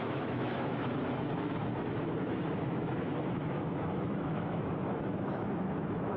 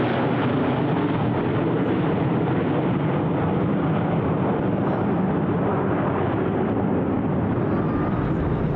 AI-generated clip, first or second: first